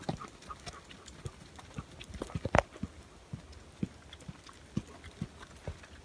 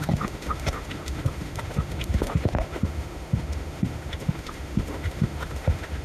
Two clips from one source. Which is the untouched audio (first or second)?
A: first